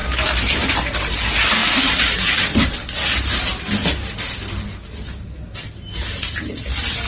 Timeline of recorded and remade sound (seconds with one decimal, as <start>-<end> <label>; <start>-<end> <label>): 0.0-7.1 recorded